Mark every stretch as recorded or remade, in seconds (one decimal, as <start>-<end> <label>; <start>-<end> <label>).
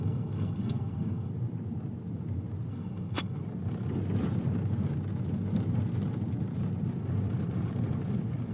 0.0-1.3 remade; 1.3-2.7 recorded; 2.7-3.4 remade; 3.4-8.5 recorded